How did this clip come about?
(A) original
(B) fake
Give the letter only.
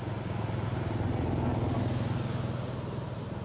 A